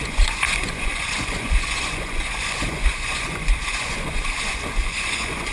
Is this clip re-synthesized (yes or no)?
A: yes